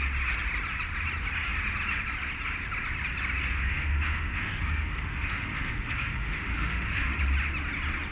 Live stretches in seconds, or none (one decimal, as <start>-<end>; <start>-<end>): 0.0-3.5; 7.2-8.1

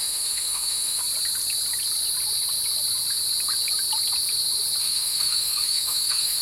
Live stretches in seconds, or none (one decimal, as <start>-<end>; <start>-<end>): 1.0-4.8

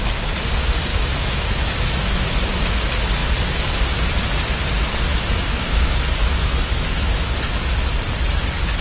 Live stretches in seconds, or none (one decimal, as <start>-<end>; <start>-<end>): 0.0-0.9; 2.3-5.1; 7.3-8.8